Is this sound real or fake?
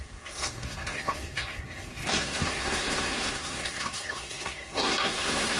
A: fake